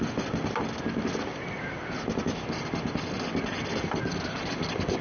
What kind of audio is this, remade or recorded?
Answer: recorded